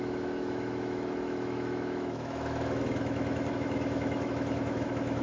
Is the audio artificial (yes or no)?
yes